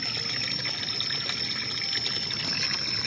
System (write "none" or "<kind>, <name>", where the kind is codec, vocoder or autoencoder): none